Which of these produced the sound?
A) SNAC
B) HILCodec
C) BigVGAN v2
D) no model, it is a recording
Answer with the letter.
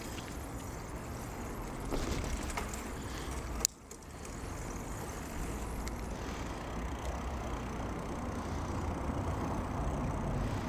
D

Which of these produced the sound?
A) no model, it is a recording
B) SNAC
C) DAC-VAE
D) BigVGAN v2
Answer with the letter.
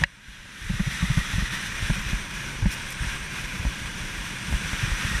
D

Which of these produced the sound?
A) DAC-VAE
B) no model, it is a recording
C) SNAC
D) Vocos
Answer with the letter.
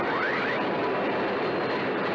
B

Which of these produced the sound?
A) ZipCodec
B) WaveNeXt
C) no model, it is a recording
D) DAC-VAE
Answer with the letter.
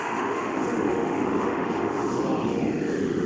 D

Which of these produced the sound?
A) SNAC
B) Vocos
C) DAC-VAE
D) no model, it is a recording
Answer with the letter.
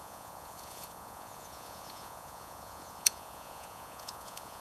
B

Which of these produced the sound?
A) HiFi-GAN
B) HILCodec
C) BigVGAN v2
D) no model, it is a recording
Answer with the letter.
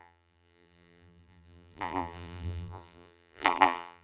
C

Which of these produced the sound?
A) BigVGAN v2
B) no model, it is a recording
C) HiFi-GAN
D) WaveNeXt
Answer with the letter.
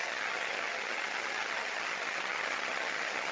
C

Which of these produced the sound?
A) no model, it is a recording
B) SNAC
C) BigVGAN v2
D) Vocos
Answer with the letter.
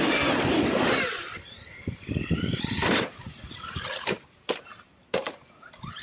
C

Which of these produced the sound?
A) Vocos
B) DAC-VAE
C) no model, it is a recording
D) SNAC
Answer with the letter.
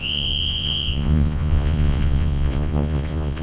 A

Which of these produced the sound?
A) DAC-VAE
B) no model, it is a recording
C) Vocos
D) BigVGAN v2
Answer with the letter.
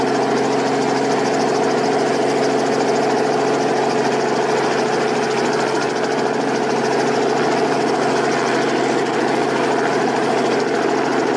B